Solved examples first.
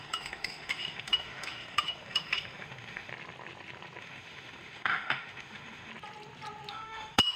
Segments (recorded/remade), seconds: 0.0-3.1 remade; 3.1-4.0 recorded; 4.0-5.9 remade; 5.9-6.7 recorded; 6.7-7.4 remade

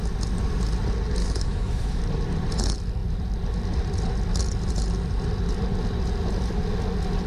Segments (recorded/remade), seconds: 0.0-1.2 recorded; 1.2-2.0 remade; 2.0-7.3 recorded

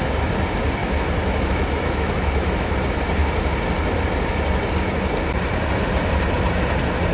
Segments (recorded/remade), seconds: 0.0-0.8 recorded; 0.8-2.7 remade; 2.7-7.1 recorded